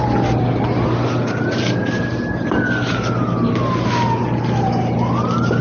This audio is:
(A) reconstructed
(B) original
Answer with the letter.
B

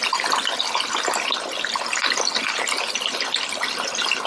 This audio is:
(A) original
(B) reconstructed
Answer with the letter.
A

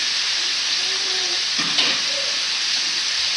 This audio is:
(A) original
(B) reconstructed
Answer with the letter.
B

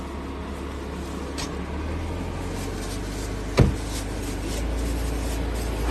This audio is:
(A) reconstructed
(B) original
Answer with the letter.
B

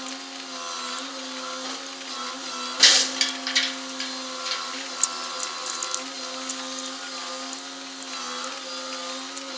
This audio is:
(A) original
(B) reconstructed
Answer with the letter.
A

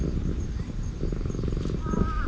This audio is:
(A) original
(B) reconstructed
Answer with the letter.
A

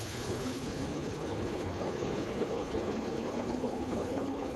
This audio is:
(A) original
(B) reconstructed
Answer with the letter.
B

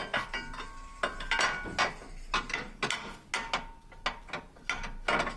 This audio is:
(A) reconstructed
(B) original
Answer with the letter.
B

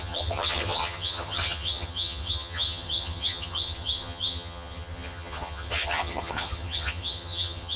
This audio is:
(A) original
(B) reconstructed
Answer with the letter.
B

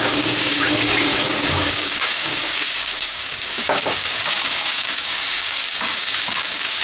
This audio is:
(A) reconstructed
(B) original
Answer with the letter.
A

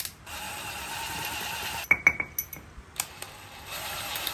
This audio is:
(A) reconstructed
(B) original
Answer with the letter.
B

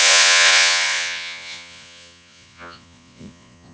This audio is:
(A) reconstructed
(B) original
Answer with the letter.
A